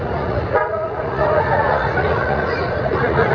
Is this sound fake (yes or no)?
yes